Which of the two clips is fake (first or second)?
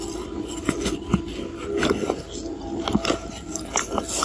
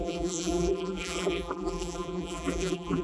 second